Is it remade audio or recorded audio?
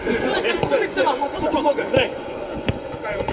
remade